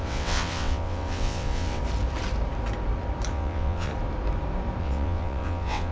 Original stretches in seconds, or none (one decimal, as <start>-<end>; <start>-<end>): 1.8-3.3; 3.9-4.8